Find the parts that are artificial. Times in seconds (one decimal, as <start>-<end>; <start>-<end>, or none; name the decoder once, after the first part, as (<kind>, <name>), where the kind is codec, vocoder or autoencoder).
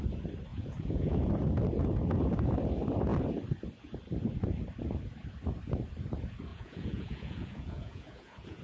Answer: 0.5-1.3 (vocoder, Vocos); 6.5-8.6